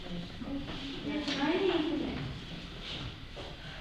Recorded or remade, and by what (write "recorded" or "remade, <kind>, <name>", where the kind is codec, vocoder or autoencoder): recorded